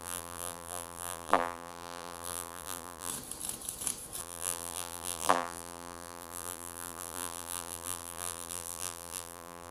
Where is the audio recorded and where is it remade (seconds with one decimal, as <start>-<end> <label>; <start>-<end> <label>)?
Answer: 0.0-3.1 remade; 3.1-4.2 recorded; 4.2-9.7 remade